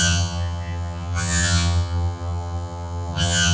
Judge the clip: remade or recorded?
remade